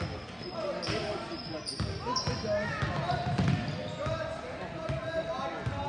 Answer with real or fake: real